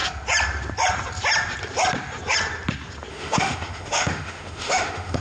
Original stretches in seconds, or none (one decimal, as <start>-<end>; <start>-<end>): 0.0-3.1